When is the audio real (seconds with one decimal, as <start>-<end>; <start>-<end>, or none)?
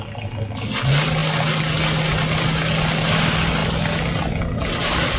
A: 0.0-5.2